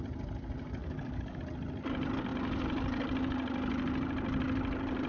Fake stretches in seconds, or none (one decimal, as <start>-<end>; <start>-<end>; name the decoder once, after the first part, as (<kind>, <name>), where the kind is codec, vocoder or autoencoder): 0.8-1.4 (codec, DAC)